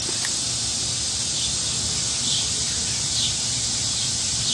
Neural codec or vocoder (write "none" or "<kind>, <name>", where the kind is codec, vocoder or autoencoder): none